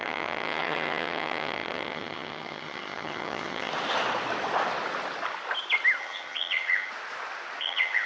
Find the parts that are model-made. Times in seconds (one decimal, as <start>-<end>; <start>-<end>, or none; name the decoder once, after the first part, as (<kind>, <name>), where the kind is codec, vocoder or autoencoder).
0.0-3.7 (vocoder, HiFi-GAN); 6.0-6.9; 7.6-8.1

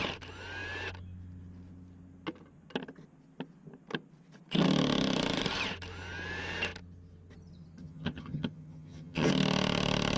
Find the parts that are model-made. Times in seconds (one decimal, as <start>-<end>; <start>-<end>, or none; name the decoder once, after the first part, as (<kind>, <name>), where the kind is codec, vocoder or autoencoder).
7.8-9.3 (vocoder, HiFi-GAN)